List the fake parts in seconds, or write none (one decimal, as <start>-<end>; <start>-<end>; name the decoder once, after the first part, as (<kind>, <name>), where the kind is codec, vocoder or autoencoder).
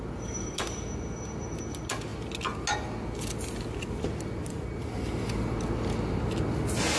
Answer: none